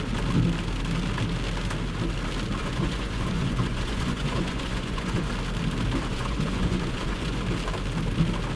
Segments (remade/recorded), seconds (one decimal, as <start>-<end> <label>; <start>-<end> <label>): 0.0-2.6 recorded; 2.6-5.3 remade; 5.3-6.1 recorded; 6.1-7.4 remade; 7.4-8.6 recorded

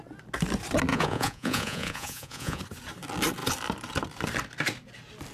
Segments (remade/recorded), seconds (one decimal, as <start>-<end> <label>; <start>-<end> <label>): 0.0-0.9 recorded; 0.9-2.6 remade; 2.6-5.3 recorded

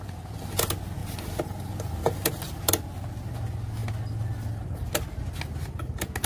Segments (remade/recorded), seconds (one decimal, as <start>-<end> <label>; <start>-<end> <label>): 0.0-1.0 recorded; 1.0-1.7 remade; 1.7-6.3 recorded

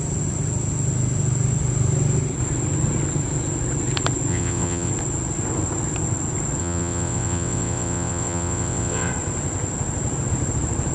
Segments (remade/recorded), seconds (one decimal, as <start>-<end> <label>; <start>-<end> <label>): 0.0-4.3 recorded; 4.3-4.9 remade; 4.9-6.6 recorded; 6.6-9.1 remade; 9.1-10.9 recorded

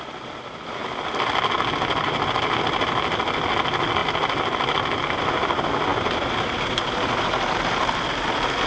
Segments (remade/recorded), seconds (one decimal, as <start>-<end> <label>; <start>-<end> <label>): 0.0-8.7 recorded

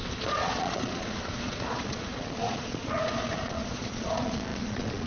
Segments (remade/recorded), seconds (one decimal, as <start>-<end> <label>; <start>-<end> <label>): 0.0-5.1 remade